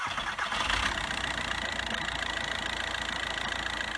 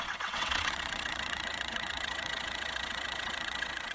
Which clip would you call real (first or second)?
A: first